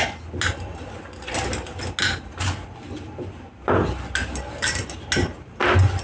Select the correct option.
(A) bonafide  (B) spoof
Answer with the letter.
A